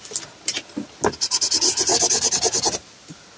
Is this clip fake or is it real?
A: real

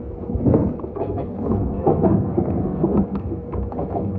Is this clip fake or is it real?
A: fake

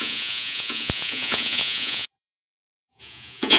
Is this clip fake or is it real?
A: fake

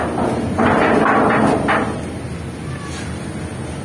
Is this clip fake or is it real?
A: real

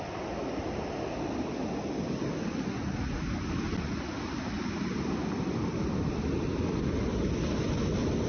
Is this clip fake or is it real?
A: fake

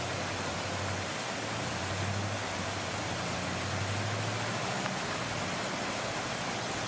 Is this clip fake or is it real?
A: real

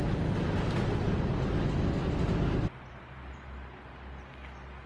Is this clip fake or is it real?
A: real